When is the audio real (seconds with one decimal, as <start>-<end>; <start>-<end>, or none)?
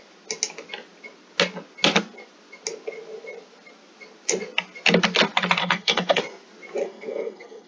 0.0-5.6; 6.2-6.8